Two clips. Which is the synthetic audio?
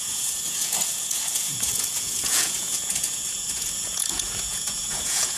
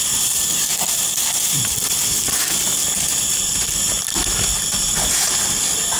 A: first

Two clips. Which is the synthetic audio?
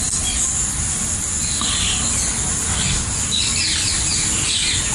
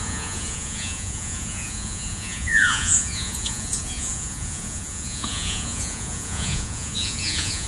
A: second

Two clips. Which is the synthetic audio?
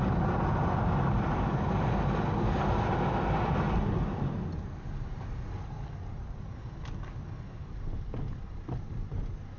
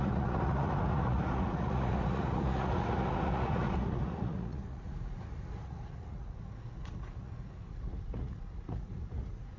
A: second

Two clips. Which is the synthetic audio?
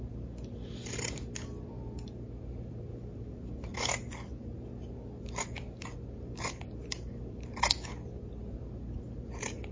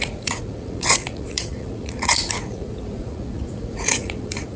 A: second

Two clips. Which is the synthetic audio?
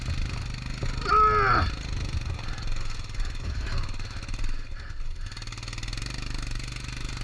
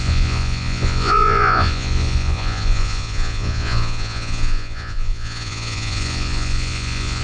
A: second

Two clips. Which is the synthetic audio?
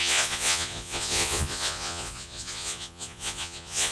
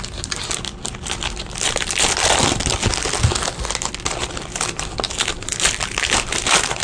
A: first